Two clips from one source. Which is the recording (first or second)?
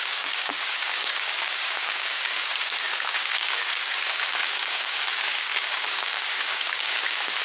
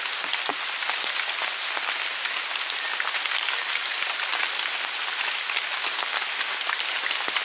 second